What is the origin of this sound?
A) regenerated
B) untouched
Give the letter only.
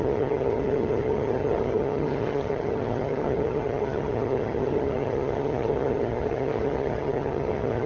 A